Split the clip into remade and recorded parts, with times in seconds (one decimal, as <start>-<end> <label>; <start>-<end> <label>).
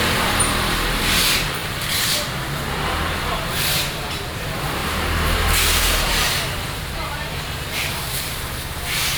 0.0-9.2 remade